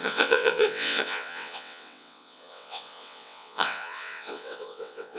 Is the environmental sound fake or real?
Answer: fake